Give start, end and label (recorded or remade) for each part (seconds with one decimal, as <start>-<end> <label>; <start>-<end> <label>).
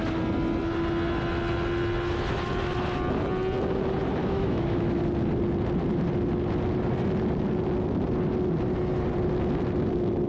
0.0-4.2 recorded; 4.2-5.0 remade; 5.0-10.3 recorded